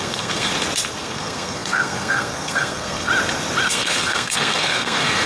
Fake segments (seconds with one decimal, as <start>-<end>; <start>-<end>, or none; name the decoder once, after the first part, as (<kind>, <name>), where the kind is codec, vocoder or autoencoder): 0.0-0.5 (codec, SNAC); 1.0-3.1; 3.7-5.3